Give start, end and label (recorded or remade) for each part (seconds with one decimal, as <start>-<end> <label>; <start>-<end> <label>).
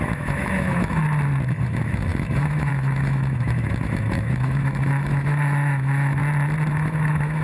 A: 0.0-1.0 remade; 1.0-1.5 recorded; 1.5-6.2 remade; 6.2-6.7 recorded; 6.7-7.4 remade